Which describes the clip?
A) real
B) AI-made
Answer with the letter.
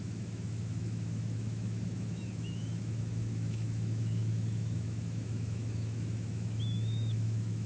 B